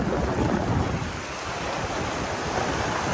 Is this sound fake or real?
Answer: real